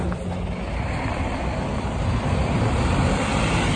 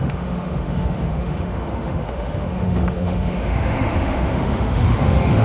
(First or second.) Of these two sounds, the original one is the first